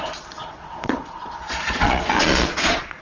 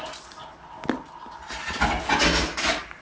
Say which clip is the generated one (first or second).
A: first